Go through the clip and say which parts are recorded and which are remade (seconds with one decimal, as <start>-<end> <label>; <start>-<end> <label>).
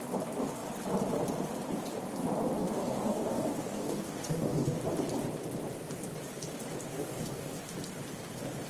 0.0-2.6 recorded; 2.6-4.8 remade; 4.8-6.9 recorded; 6.9-7.6 remade; 7.6-8.7 recorded